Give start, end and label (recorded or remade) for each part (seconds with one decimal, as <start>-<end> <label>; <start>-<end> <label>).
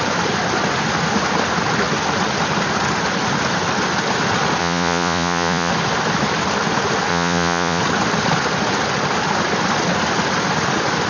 0.0-4.6 recorded; 4.6-5.7 remade; 5.7-7.1 recorded; 7.1-7.8 remade; 7.8-11.1 recorded